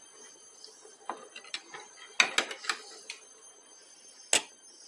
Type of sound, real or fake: real